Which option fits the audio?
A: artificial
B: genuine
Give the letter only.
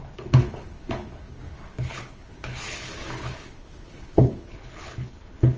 A